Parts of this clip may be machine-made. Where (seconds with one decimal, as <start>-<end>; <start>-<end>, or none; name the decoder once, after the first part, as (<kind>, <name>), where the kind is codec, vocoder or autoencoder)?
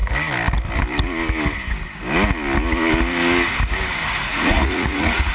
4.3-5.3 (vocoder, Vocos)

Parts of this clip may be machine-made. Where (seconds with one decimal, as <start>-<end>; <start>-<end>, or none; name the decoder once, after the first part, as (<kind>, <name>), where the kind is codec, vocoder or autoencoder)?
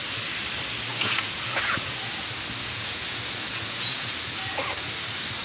0.9-2.0 (vocoder, Vocos); 2.6-4.4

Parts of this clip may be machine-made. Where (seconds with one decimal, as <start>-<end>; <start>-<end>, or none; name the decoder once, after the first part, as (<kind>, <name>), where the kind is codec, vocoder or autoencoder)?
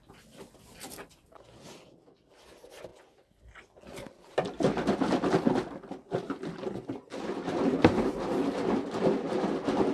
7.7-8.2 (vocoder, BigVGAN v2)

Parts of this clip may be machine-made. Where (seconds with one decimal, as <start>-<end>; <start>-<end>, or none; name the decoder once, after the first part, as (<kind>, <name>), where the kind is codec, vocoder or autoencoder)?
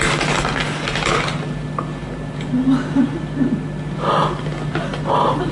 none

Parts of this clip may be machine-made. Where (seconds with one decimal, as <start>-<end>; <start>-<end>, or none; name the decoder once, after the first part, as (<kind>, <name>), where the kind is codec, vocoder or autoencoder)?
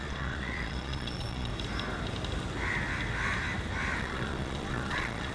0.0-1.5 (vocoder, Vocos); 4.0-5.3